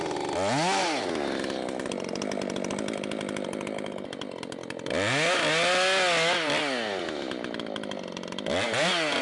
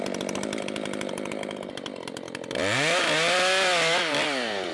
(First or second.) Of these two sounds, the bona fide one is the first